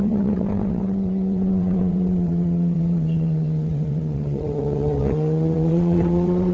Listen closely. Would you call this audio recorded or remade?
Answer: remade